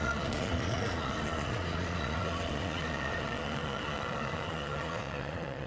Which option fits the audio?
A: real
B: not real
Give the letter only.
B